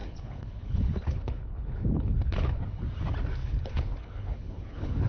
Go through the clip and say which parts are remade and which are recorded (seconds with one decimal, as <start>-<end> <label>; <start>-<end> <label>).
0.0-2.6 remade; 2.6-3.4 recorded; 3.4-5.1 remade